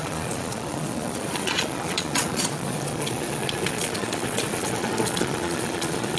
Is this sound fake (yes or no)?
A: yes